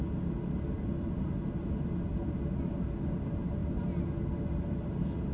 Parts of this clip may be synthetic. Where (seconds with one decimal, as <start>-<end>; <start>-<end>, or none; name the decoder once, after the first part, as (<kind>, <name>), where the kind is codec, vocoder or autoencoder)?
none